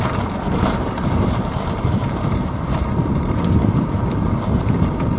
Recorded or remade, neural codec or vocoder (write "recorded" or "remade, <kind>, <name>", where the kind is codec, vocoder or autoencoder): remade, vocoder, BigVGAN v2